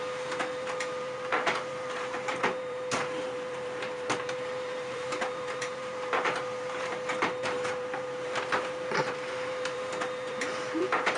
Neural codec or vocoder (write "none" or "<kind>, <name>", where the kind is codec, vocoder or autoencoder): vocoder, BigVGAN v2